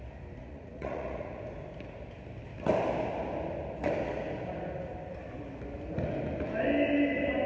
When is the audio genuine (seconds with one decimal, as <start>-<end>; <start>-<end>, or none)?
0.0-0.4; 1.4-7.5